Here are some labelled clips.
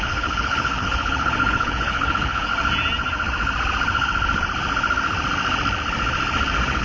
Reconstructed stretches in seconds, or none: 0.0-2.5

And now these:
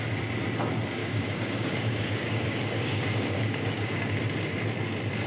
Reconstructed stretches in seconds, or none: 1.0-4.2